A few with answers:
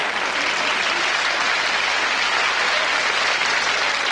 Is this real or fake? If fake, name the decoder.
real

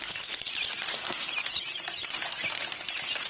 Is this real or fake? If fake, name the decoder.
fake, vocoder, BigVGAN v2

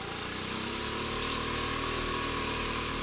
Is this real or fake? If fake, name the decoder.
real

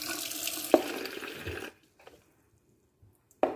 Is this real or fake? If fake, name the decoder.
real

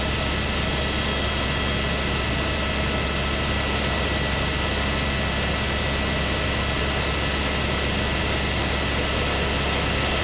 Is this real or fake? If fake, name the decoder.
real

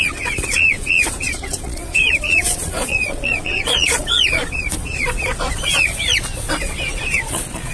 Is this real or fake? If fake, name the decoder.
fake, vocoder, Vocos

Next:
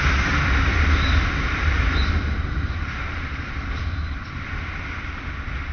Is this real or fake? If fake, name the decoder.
real